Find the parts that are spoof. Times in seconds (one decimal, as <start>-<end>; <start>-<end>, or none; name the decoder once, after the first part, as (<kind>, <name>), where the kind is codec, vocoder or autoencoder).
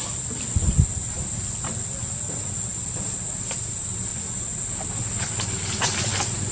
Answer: none